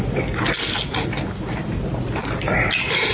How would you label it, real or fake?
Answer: real